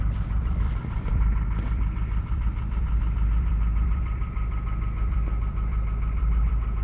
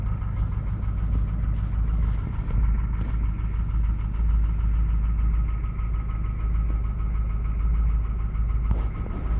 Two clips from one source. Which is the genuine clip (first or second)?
second